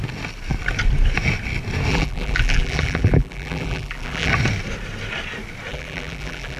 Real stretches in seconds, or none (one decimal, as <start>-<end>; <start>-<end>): 0.0-1.9; 4.3-5.7